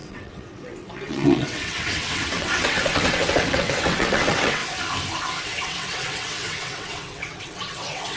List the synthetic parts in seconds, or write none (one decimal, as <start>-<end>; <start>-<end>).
0.0-4.6; 5.4-8.2